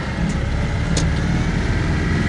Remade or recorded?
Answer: recorded